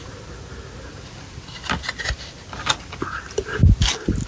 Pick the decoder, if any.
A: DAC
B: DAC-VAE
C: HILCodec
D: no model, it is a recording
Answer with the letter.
D